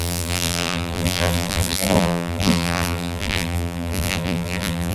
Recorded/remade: remade